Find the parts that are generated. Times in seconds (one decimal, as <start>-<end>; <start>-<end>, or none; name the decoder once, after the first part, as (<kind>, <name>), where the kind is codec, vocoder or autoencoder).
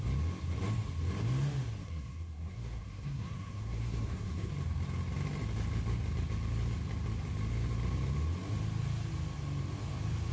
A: 1.8-4.5 (codec, SNAC)